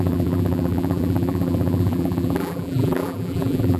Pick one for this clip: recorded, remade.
remade